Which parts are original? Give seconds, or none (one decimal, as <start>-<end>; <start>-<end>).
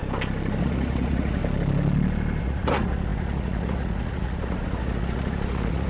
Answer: 0.0-0.6; 1.4-2.4